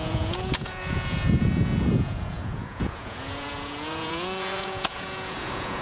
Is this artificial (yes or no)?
yes